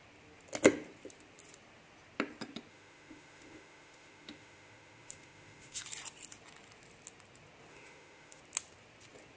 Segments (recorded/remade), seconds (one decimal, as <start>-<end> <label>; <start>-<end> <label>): 0.0-2.7 recorded; 2.7-5.8 remade; 5.8-7.7 recorded; 7.7-8.4 remade; 8.4-9.4 recorded